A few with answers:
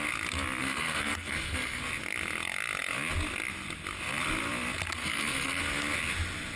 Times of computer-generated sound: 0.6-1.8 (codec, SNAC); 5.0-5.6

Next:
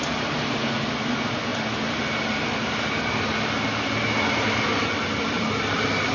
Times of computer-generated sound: none

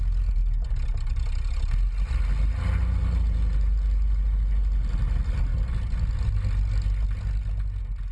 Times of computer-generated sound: none